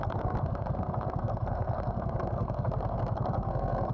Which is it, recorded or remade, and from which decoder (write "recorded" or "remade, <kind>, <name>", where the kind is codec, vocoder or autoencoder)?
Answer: remade, codec, SNAC